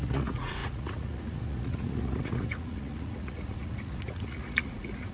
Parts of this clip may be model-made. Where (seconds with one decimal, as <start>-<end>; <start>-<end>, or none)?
0.0-5.1